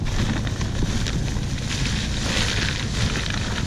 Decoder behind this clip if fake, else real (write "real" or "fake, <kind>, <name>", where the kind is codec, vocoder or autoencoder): real